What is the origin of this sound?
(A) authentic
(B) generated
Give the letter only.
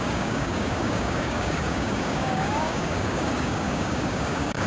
B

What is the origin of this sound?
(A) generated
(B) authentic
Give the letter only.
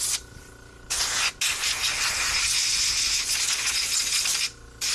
B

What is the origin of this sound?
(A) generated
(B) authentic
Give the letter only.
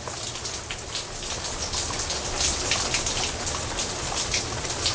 B